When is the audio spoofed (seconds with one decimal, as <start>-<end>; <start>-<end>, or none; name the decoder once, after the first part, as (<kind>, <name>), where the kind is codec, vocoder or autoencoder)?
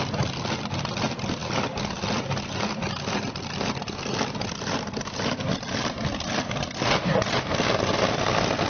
none